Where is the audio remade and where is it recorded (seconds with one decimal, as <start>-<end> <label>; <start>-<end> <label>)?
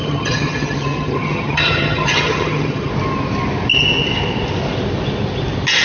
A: 0.0-2.9 remade; 2.9-5.8 recorded